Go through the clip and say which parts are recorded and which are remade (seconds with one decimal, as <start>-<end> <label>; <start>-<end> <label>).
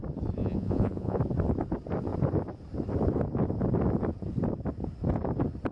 0.0-0.4 recorded; 0.4-1.2 remade; 1.2-5.7 recorded